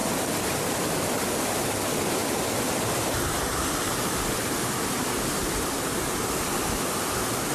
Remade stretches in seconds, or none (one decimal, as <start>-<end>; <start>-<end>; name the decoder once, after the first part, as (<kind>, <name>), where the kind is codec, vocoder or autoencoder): none